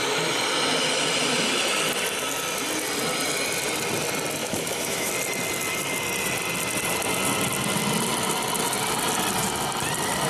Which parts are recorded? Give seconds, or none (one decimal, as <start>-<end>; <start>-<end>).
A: 0.0-4.4; 5.1-10.3